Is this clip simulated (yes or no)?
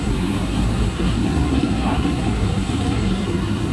yes